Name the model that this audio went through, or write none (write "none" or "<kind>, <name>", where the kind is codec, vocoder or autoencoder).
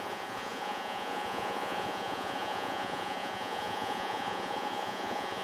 vocoder, Vocos